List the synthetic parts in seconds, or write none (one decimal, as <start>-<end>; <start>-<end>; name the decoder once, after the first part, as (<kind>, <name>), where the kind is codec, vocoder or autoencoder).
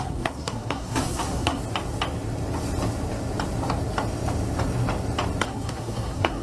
0.0-1.6 (codec, SNAC); 5.4-6.4